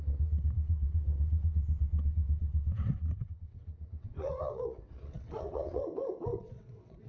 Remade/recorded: remade